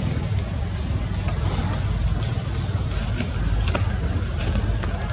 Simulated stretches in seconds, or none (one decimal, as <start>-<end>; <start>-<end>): none